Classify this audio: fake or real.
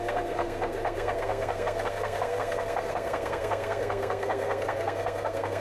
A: fake